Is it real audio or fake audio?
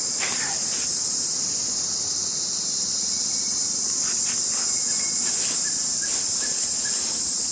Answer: real